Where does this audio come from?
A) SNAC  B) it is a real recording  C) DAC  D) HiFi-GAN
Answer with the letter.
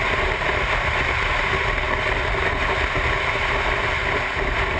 B